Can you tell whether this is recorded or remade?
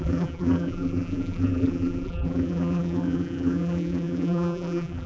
remade